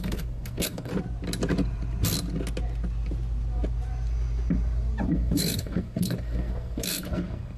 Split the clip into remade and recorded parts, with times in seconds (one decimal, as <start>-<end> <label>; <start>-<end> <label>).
0.0-0.9 remade; 0.9-5.1 recorded; 5.1-7.6 remade